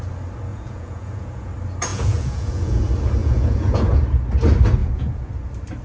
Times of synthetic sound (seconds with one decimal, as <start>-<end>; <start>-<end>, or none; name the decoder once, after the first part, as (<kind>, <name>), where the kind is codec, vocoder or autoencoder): 0.5-1.5 (vocoder, Vocos); 1.9-2.8; 3.2-4.0; 4.8-5.3